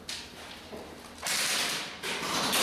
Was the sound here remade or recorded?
recorded